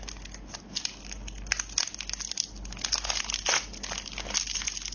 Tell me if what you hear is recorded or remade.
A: recorded